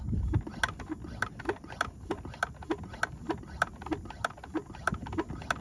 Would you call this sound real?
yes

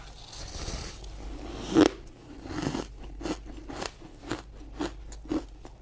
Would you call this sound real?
yes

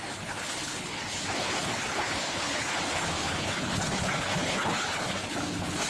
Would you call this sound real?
no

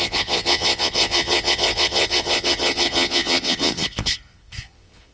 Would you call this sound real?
no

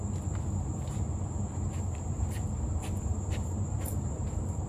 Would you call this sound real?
no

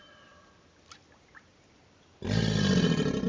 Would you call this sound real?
yes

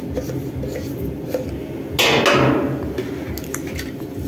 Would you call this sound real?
yes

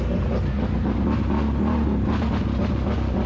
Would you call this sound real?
yes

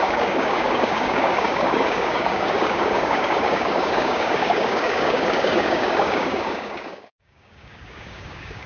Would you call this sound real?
no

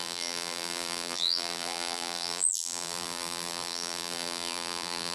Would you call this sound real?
no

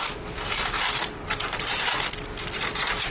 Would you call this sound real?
yes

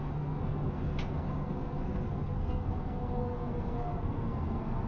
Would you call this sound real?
no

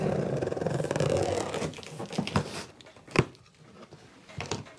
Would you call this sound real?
yes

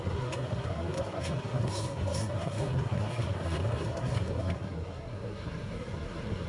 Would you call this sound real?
no